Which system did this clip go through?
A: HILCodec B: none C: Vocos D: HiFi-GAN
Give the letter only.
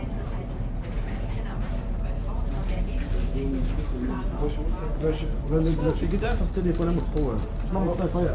B